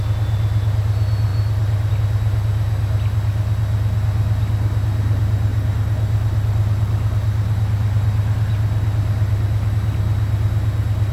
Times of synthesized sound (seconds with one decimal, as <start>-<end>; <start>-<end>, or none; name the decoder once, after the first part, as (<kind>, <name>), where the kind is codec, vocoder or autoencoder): 1.3-1.9 (vocoder, BigVGAN v2); 5.5-9.7